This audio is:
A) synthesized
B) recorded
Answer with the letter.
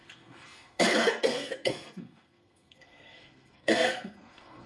A